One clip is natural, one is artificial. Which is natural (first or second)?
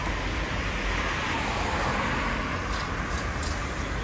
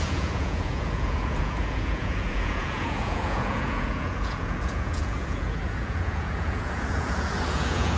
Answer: first